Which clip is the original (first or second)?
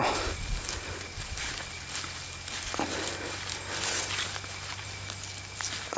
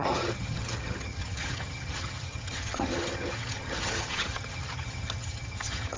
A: first